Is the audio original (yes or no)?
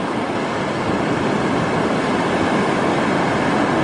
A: no